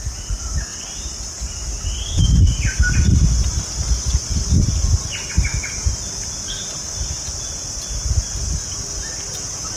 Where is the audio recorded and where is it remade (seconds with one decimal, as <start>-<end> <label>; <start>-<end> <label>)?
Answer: 0.0-9.8 recorded